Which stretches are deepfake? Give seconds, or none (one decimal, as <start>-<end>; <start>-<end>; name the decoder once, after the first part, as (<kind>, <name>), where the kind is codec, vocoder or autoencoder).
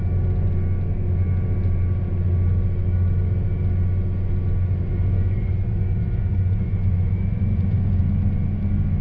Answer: 4.9-8.0 (vocoder, Vocos)